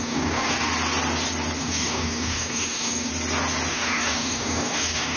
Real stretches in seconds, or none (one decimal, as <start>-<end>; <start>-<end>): 0.7-1.6; 3.1-3.7